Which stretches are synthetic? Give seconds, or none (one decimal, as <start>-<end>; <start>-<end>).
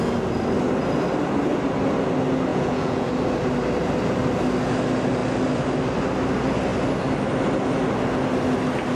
2.5-3.1